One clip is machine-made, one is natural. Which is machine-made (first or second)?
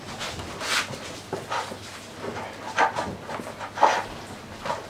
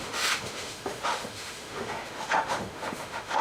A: second